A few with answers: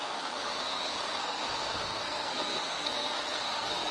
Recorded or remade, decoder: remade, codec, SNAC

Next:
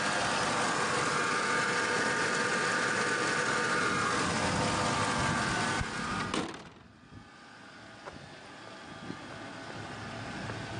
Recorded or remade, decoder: recorded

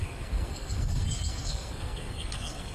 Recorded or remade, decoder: remade, codec, SNAC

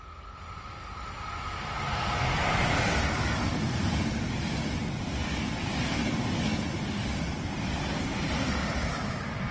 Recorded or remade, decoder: recorded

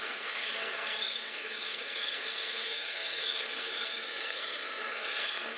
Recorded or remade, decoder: remade, codec, SNAC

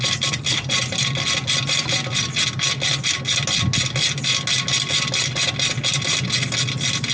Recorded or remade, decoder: recorded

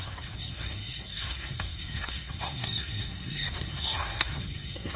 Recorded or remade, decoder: remade, codec, SNAC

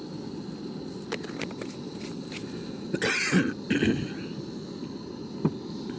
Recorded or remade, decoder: recorded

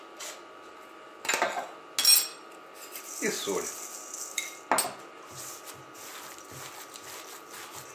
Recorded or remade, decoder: recorded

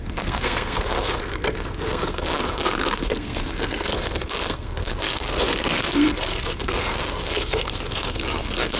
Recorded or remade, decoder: remade, codec, SNAC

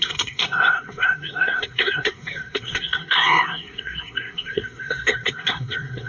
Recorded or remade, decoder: remade, codec, SNAC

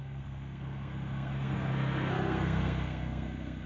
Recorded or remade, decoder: remade, codec, SNAC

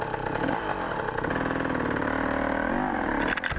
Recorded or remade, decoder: recorded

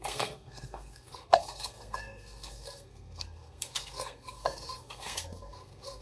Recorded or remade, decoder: remade, codec, SNAC